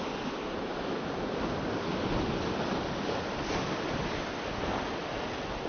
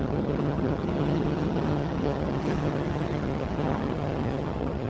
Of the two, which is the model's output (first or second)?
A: second